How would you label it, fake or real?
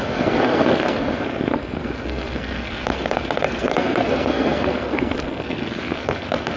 fake